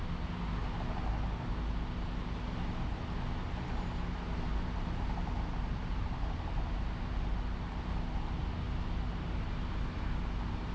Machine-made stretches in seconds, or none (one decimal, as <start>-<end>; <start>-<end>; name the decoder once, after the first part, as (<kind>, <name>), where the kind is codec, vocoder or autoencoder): none

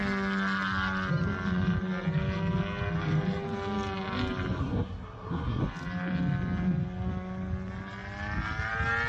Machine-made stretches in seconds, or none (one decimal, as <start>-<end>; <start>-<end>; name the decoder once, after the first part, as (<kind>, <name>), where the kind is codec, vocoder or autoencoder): 4.6-5.6 (codec, SNAC)

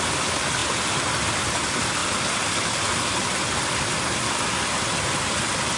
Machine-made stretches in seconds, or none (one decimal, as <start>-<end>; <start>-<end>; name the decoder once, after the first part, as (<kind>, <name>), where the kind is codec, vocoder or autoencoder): none

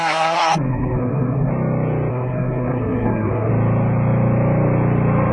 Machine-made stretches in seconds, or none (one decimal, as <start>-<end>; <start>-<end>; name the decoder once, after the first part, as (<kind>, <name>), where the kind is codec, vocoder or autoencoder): 0.0-1.5 (codec, SNAC); 2.1-3.5